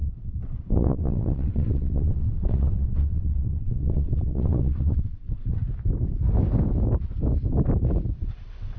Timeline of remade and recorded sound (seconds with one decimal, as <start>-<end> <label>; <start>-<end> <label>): 0.0-5.6 remade; 5.6-8.2 recorded; 8.2-8.8 remade